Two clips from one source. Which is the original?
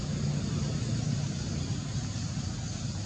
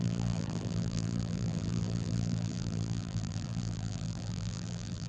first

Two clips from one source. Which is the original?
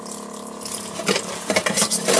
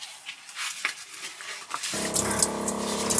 second